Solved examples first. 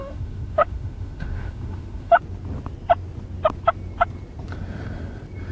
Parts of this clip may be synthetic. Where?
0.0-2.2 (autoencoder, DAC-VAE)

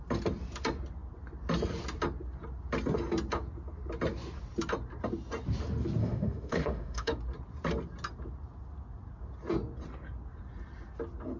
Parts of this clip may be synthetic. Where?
6.0-7.2 (autoencoder, DAC-VAE)

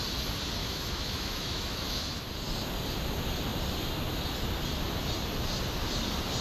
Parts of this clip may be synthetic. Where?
0.6-2.2 (autoencoder, DAC-VAE)

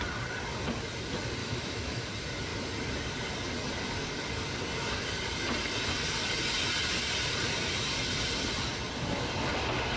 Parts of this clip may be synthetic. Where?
1.4-2.1 (autoencoder, DAC-VAE)

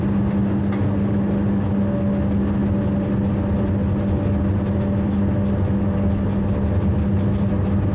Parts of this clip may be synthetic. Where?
none

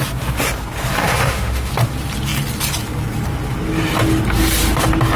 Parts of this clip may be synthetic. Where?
1.0-1.7 (autoencoder, DAC-VAE)